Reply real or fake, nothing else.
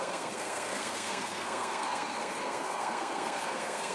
fake